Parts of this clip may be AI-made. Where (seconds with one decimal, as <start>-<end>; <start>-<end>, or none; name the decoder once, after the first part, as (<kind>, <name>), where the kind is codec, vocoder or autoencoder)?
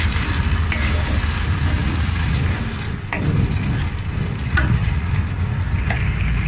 1.8-2.4 (vocoder, Vocos); 4.4-5.1